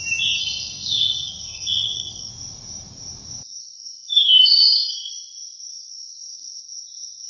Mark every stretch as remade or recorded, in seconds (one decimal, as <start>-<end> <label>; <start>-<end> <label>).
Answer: 0.0-0.4 recorded; 0.4-2.3 remade; 2.3-3.6 recorded; 3.6-5.1 remade; 5.1-5.7 recorded; 5.7-6.6 remade; 6.6-7.3 recorded